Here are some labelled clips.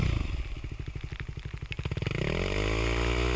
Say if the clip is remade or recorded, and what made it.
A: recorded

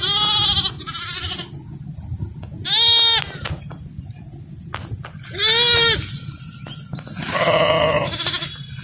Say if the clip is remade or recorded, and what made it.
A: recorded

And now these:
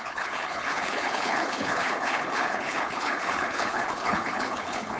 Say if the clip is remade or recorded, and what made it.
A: remade, codec, HILCodec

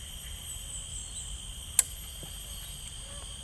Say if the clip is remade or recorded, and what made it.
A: recorded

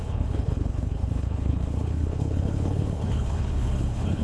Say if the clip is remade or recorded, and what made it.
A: remade, codec, HILCodec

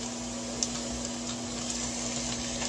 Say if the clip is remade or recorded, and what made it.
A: recorded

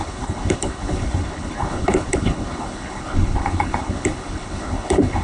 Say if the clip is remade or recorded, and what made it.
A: remade, codec, HILCodec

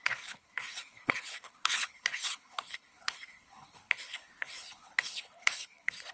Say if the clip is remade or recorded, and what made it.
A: remade, codec, HILCodec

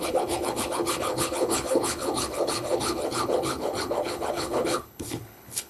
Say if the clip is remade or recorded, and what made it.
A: remade, codec, HILCodec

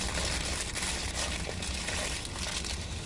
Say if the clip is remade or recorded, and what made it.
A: recorded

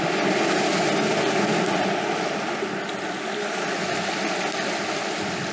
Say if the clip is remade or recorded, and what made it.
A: recorded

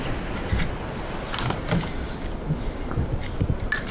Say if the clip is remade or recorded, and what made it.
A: recorded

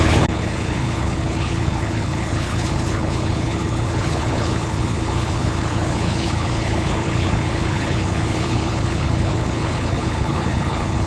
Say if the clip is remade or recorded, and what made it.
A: remade, codec, HILCodec